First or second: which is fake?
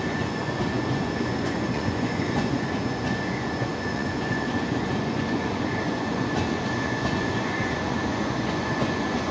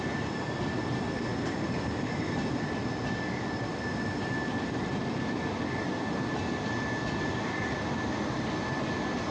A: first